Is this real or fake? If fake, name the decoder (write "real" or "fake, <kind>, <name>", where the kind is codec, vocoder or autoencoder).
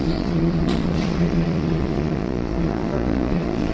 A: fake, vocoder, Vocos